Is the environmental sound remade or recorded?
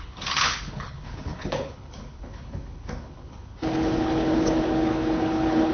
remade